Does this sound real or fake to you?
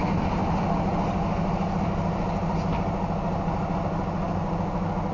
real